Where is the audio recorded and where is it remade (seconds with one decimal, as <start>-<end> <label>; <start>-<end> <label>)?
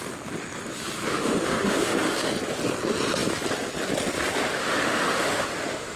0.0-1.1 recorded; 1.1-2.3 remade; 2.3-4.5 recorded; 4.5-6.0 remade